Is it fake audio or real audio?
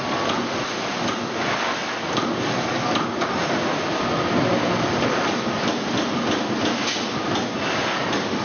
real